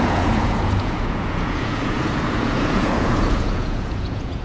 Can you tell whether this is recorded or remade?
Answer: remade